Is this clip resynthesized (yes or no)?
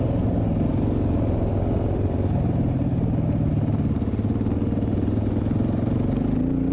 no